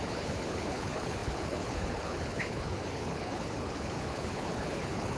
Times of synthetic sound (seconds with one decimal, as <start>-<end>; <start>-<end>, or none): 0.0-5.2